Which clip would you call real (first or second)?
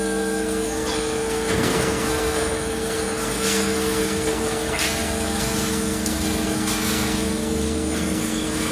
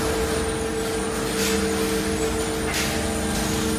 second